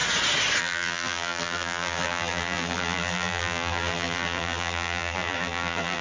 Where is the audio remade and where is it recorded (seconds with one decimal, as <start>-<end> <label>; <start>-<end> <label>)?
0.0-0.6 recorded; 0.6-6.0 remade